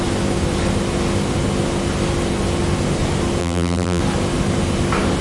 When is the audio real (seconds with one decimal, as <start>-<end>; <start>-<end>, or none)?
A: 0.0-3.4; 4.0-5.2